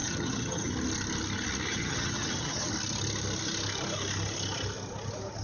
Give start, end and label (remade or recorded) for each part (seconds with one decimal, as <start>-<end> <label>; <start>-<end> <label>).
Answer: 0.0-0.7 remade; 0.7-1.7 recorded; 1.7-2.7 remade; 2.7-5.4 recorded